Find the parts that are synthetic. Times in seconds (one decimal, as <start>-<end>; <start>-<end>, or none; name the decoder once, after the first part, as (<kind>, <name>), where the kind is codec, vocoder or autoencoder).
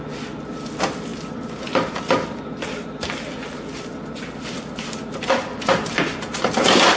none